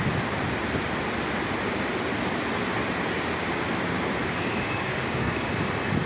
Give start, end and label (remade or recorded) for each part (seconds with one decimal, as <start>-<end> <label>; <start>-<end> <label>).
0.0-4.2 recorded; 4.2-5.5 remade; 5.5-6.1 recorded